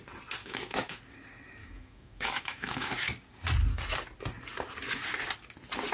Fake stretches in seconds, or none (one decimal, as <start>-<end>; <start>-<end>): 0.4-1.0; 1.6-2.9